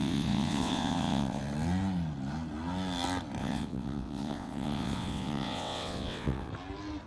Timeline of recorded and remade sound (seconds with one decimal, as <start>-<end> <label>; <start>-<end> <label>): 0.0-1.4 remade; 1.4-3.4 recorded; 3.4-6.5 remade; 6.5-7.1 recorded